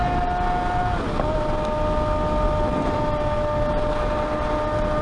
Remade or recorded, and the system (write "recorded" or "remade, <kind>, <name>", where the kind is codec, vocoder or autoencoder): recorded